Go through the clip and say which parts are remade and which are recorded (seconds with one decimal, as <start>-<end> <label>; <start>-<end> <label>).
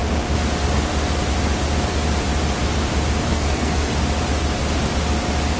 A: 0.0-3.3 recorded; 3.3-3.9 remade; 3.9-5.6 recorded